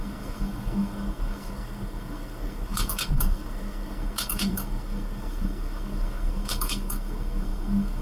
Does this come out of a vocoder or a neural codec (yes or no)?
yes